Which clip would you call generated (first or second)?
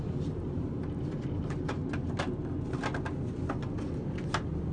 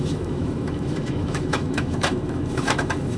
second